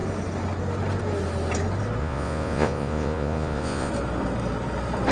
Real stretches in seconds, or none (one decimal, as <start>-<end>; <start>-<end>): 0.0-2.0; 3.9-5.1